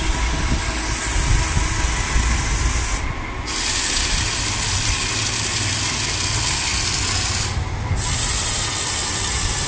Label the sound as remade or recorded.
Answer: recorded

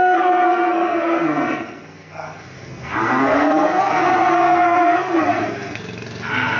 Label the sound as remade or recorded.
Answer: remade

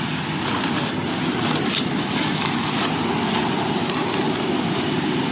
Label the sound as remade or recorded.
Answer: recorded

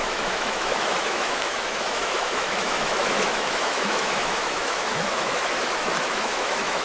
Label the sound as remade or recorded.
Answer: remade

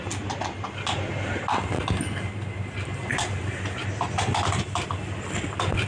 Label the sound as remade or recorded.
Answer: recorded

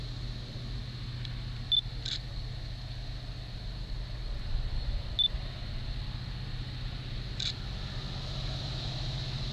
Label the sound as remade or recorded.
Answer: recorded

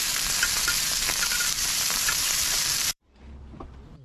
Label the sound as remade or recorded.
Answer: remade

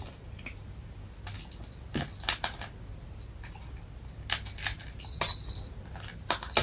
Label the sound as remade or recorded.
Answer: recorded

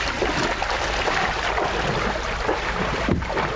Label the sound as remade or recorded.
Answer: recorded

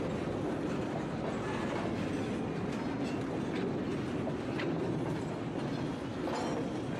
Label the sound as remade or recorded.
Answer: recorded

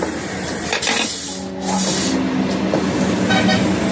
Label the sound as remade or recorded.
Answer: recorded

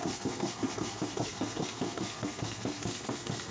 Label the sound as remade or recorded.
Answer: remade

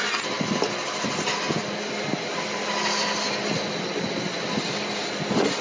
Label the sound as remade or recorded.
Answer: recorded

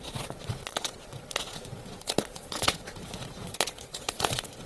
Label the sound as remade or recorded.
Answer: remade